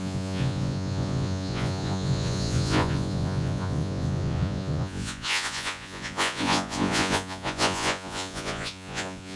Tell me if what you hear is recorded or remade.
remade